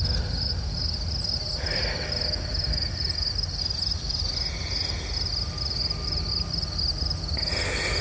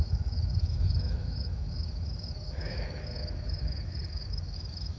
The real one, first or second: first